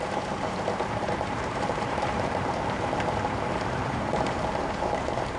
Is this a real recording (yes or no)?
no